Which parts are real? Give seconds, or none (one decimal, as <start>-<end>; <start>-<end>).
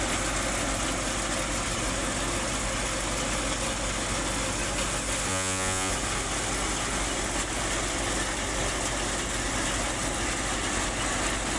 0.0-5.3; 5.9-11.6